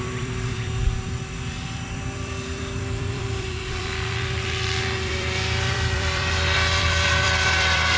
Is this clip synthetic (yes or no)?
yes